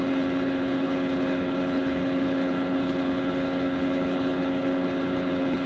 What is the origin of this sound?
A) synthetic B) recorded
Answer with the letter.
A